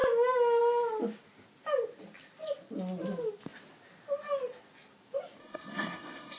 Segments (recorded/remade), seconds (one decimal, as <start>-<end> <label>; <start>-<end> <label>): 0.0-5.4 recorded; 5.4-6.4 remade